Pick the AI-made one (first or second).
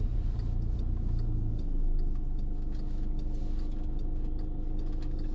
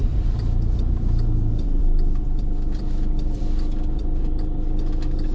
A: second